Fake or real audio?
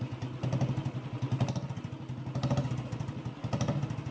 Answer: real